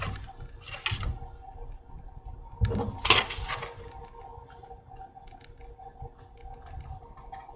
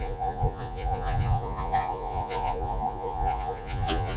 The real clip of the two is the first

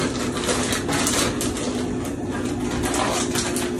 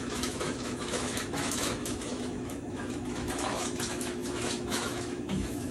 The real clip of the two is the first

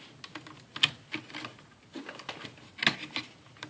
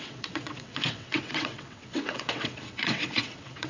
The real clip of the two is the first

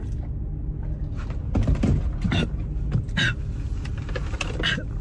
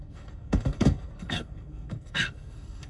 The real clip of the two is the first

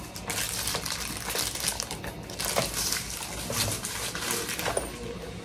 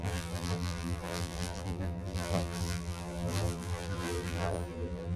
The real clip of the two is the first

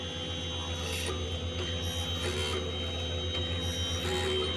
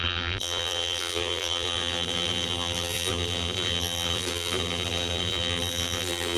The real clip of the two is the first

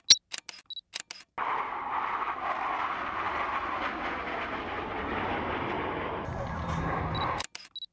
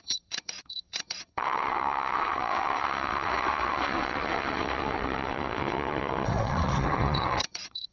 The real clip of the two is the first